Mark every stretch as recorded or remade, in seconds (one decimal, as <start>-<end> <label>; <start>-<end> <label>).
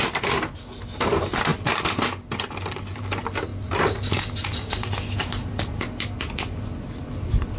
0.0-7.6 recorded